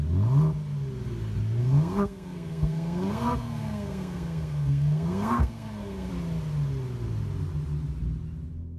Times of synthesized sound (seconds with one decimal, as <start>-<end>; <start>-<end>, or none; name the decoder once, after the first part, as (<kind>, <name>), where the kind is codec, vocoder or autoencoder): 1.6-6.1 (codec, SNAC)